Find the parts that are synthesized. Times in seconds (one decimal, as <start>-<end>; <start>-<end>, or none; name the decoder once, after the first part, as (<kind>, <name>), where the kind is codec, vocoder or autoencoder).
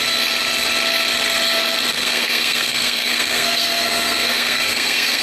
1.9-5.2 (codec, SNAC)